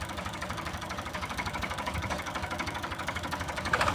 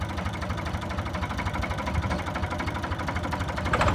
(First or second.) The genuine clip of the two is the second